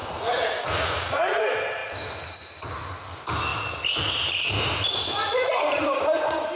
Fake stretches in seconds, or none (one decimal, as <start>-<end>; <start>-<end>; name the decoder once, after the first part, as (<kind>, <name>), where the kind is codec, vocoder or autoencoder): 0.0-1.4 (vocoder, Vocos); 5.3-5.8